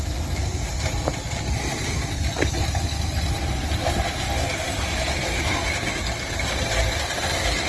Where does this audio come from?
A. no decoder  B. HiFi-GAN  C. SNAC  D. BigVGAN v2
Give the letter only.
A